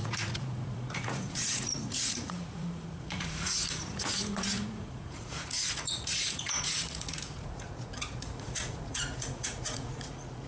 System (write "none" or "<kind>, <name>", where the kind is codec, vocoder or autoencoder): vocoder, Vocos